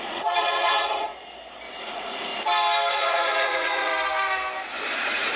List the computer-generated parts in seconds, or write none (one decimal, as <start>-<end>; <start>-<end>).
0.0-1.1; 1.7-2.3; 2.9-3.9; 4.9-5.4